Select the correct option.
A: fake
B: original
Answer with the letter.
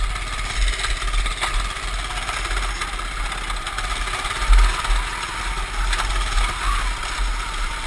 B